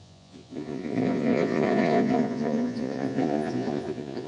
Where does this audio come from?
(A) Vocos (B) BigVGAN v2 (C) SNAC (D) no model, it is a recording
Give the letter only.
A